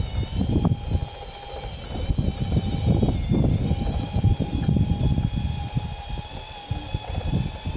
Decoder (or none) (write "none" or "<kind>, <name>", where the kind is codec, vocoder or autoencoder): none